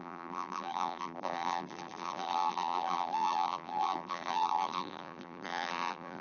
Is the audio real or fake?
fake